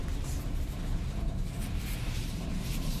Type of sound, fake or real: fake